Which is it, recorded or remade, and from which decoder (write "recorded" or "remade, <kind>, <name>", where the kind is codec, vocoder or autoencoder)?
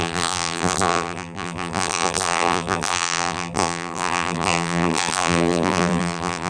remade, vocoder, BigVGAN v2